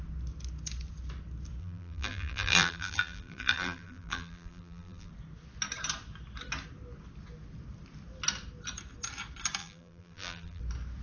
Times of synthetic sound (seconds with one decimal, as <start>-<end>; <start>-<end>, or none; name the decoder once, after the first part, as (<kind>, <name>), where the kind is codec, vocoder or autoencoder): 1.6-5.1 (vocoder, BigVGAN v2); 9.6-10.6

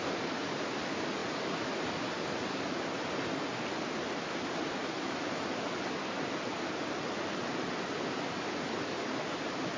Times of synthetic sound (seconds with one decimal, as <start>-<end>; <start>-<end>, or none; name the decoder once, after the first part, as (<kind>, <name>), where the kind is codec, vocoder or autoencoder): none

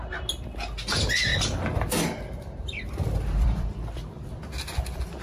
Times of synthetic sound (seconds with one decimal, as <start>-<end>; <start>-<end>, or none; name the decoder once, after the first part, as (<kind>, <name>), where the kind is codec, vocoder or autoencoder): 1.3-4.4 (vocoder, BigVGAN v2)